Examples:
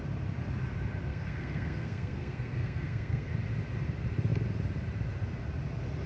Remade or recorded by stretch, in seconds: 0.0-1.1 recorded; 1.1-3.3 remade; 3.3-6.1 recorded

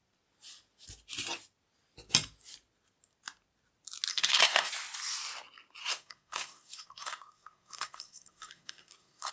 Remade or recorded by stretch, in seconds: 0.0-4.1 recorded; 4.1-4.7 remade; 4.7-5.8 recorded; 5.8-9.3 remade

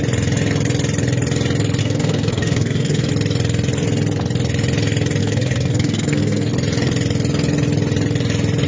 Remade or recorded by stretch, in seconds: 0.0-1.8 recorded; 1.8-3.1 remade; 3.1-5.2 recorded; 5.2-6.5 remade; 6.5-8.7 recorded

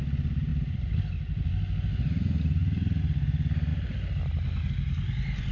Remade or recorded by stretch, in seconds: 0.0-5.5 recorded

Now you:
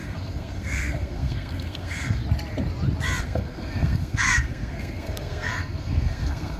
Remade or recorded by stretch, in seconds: 0.0-2.2 remade; 2.2-3.2 recorded; 3.2-6.6 remade